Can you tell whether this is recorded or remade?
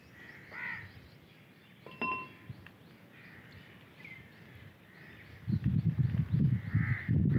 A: recorded